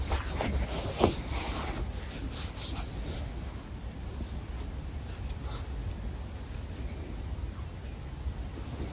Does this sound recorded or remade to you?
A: recorded